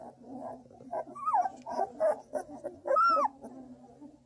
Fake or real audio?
real